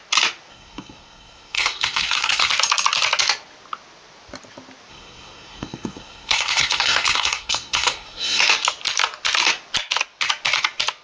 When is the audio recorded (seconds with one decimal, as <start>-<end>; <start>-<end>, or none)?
0.0-0.5; 2.5-4.9; 8.4-11.0